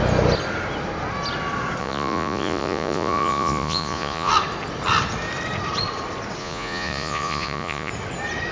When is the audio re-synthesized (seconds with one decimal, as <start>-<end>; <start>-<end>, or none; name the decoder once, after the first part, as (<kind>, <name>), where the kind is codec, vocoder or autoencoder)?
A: 1.8-4.3 (vocoder, Vocos); 6.4-7.9